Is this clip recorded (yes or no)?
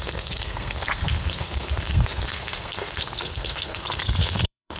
no